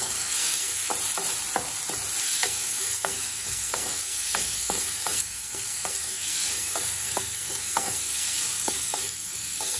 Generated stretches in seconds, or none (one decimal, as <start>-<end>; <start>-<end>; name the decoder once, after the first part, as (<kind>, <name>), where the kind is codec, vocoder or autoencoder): 0.0-0.9 (codec, SNAC); 2.2-9.8